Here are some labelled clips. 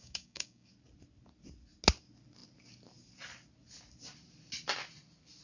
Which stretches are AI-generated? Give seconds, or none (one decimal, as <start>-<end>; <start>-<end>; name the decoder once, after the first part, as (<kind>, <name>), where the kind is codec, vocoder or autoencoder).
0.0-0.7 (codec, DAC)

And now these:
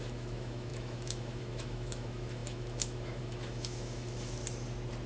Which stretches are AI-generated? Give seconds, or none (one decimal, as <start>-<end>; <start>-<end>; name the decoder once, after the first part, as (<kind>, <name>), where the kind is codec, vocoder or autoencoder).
0.0-4.4 (autoencoder, DAC-VAE)

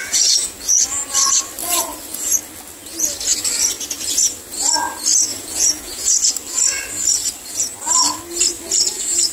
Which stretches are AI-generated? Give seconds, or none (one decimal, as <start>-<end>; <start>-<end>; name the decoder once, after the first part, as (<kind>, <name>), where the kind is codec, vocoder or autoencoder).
0.0-0.6 (vocoder, Vocos); 5.3-6.1

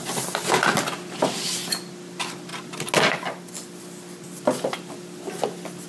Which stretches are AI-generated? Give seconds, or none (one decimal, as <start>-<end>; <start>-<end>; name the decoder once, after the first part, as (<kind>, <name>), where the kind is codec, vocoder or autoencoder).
none

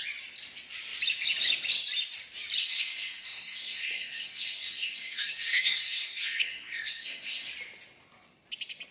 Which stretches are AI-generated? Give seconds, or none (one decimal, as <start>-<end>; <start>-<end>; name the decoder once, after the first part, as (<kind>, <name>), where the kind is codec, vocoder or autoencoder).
2.6-7.5 (codec, SNAC)

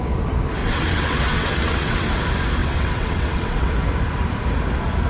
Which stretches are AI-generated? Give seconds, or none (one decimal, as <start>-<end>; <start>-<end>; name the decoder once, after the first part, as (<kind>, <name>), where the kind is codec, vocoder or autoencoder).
0.6-2.1 (vocoder, WaveNeXt); 2.6-3.7

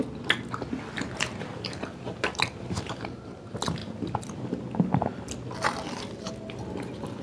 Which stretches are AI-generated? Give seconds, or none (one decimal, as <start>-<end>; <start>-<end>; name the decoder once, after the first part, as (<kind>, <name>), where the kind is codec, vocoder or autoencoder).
none

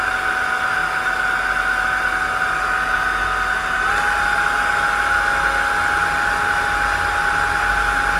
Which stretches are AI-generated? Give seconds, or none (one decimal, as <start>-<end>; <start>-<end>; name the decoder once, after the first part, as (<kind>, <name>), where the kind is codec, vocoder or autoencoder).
none